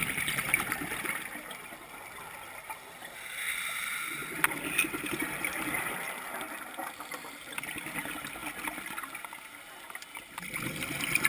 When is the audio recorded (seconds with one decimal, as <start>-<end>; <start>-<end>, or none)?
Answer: 1.2-11.3